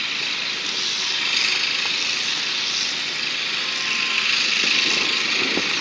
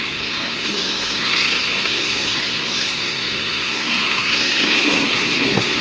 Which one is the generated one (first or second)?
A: second